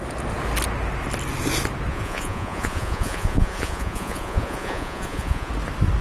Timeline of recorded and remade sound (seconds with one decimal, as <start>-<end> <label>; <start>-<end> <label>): 0.0-1.9 recorded; 1.9-5.5 remade; 5.5-6.0 recorded